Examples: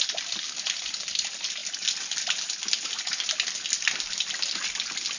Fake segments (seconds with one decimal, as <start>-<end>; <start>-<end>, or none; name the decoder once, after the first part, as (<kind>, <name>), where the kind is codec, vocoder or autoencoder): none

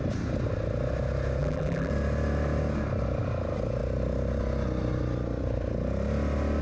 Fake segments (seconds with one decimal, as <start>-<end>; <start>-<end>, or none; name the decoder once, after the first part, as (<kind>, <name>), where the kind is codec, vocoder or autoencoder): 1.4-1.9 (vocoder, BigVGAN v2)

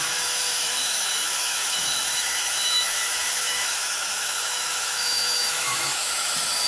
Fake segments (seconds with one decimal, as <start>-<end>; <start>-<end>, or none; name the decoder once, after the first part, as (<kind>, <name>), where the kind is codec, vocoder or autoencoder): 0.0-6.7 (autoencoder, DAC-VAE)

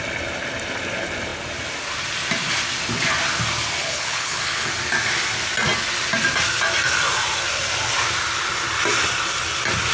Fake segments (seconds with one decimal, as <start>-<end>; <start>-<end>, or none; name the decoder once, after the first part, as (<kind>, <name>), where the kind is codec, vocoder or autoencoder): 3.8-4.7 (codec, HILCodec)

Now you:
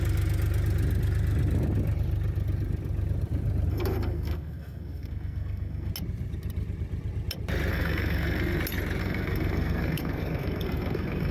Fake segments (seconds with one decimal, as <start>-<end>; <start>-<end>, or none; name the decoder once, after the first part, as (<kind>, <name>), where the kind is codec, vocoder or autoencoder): 3.7-5.9 (codec, SNAC); 7.7-8.6; 9.0-11.3